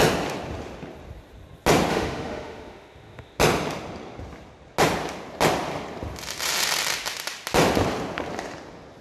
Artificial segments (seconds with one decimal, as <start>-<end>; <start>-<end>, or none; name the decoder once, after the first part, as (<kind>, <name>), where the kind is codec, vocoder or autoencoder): 1.9-3.4 (autoencoder, DAC-VAE)